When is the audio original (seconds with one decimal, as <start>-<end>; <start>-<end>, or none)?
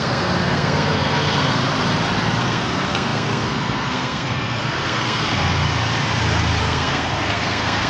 1.6-2.4; 5.6-6.6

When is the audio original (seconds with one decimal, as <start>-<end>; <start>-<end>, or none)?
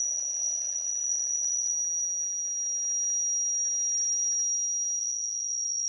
1.7-5.0